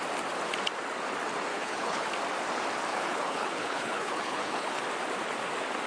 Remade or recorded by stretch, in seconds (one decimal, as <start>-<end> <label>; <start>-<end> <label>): 0.0-1.5 recorded; 1.5-2.1 remade; 2.1-2.9 recorded; 2.9-4.8 remade; 4.8-5.9 recorded